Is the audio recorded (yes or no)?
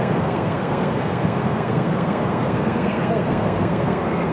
no